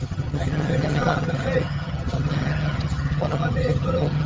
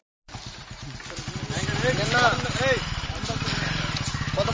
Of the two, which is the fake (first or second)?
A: first